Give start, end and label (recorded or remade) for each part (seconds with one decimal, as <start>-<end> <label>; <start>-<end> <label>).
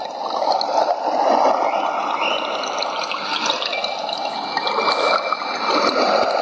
0.0-3.7 remade; 3.7-6.4 recorded